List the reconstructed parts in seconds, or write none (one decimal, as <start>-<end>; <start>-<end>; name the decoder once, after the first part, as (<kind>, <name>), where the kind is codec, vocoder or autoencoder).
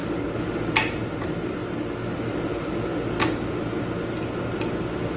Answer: none